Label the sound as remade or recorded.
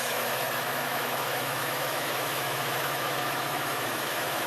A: remade